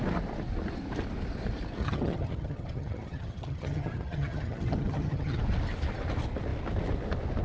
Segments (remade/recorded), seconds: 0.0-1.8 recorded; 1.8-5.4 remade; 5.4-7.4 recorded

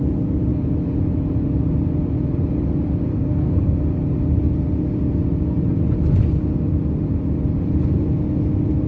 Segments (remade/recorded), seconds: 0.0-3.1 recorded; 3.1-3.8 remade; 3.8-8.9 recorded

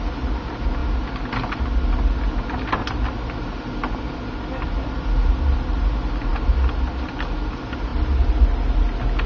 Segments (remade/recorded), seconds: 0.0-9.3 recorded

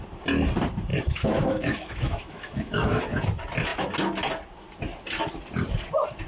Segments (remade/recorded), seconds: 0.0-0.9 recorded; 0.9-3.0 remade; 3.0-6.3 recorded

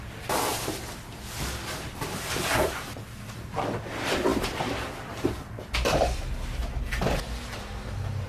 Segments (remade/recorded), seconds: 0.0-0.5 recorded; 0.5-1.4 remade; 1.4-1.9 recorded; 1.9-3.8 remade; 3.8-4.3 recorded; 4.3-5.7 remade; 5.7-8.3 recorded